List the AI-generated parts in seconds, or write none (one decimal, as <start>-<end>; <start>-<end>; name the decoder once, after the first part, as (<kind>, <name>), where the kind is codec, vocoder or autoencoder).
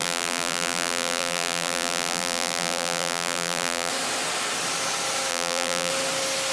0.0-3.9 (vocoder, BigVGAN v2); 5.3-5.9